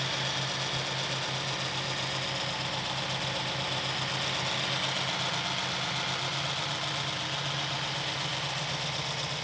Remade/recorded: recorded